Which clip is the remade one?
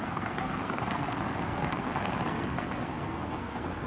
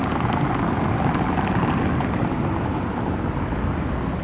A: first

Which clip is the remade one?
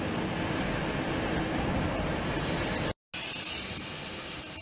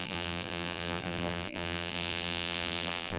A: second